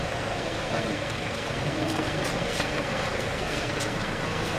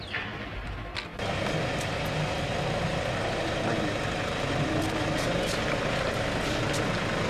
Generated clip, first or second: first